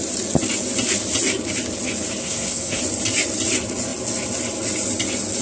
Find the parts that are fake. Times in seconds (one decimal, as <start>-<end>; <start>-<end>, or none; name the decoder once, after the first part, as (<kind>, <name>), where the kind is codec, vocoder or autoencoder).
2.2-2.8 (codec, SNAC)